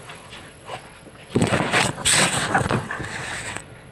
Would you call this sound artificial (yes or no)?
yes